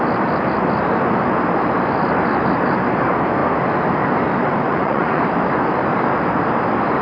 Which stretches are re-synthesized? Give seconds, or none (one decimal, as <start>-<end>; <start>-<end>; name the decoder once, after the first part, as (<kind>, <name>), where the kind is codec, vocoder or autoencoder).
4.7-5.2 (vocoder, Vocos)